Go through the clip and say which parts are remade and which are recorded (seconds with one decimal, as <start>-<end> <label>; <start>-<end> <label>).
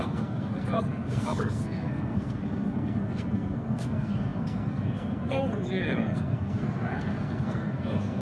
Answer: 0.0-8.2 remade